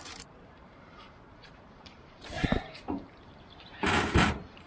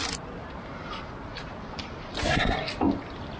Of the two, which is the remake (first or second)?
first